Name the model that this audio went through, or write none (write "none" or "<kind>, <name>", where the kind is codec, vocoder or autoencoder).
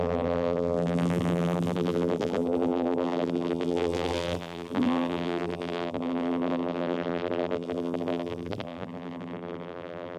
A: vocoder, BigVGAN v2